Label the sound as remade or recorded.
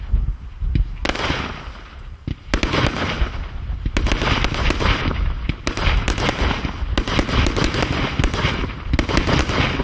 recorded